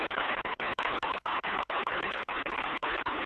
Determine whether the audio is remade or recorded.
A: remade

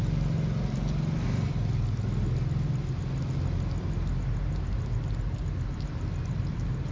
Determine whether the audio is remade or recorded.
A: recorded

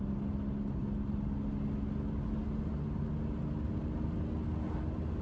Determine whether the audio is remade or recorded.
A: recorded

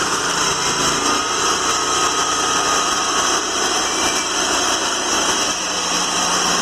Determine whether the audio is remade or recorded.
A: recorded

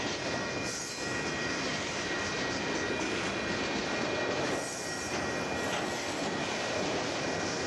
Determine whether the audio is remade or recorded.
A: recorded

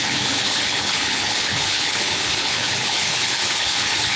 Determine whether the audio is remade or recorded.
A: remade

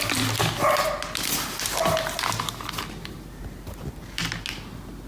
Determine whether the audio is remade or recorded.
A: recorded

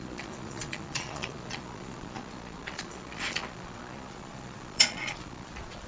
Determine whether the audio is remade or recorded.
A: remade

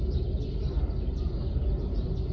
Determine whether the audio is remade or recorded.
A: recorded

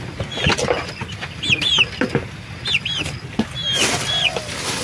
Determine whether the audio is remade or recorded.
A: recorded